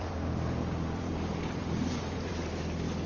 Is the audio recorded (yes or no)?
no